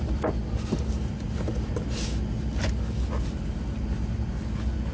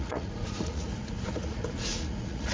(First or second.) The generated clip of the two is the second